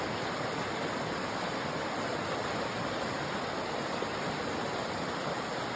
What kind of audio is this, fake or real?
real